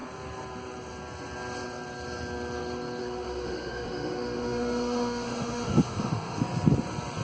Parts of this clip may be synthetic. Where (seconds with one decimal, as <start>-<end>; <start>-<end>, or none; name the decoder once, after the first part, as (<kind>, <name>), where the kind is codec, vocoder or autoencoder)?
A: 3.0-6.4 (autoencoder, DAC-VAE)

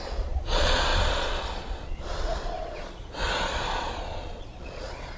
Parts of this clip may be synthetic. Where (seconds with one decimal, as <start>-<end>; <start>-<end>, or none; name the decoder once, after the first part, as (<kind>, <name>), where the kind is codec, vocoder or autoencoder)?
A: 0.0-5.2 (vocoder, Vocos)

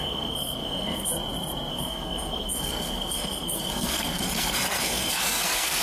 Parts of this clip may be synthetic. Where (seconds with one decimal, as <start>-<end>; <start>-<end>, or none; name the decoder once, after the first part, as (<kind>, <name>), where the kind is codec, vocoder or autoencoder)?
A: 0.0-1.1 (codec, SNAC); 1.7-5.8

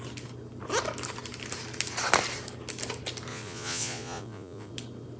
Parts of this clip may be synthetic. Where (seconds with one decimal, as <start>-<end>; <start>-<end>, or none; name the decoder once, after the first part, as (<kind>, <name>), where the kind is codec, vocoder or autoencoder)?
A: 3.3-4.7 (vocoder, Vocos)

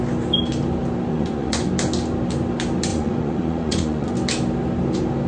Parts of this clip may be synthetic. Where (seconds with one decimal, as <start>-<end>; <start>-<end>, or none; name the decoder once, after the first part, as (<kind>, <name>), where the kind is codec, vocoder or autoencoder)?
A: 1.1-1.7 (vocoder, Vocos); 2.9-4.1

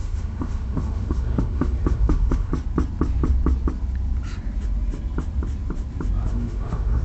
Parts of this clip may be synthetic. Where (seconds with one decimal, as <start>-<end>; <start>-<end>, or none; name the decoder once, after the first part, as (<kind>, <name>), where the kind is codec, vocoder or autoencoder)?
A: 0.0-2.5 (autoencoder, DAC-VAE); 6.3-7.0